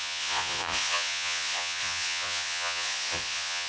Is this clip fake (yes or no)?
yes